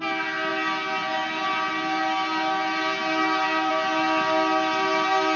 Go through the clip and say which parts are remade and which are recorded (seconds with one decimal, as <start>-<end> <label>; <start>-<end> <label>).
0.0-5.4 recorded